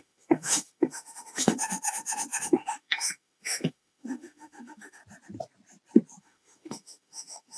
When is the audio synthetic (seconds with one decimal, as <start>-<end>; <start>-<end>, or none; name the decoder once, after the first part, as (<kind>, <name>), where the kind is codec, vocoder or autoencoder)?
0.0-5.0 (autoencoder, DAC-VAE); 6.2-7.6